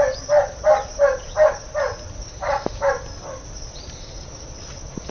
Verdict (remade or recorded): recorded